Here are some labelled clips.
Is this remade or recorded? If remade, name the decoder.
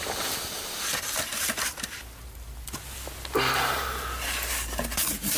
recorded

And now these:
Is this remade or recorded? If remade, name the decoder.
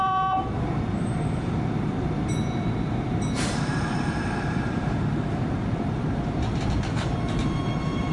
remade, vocoder, BigVGAN v2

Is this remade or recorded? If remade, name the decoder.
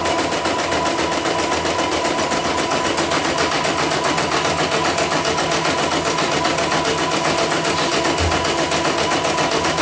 recorded